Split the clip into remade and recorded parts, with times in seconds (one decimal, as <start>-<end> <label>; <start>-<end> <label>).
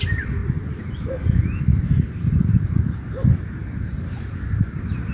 0.0-0.4 recorded; 0.4-1.0 remade; 1.0-1.7 recorded; 1.7-5.1 remade